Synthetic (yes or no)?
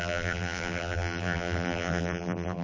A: yes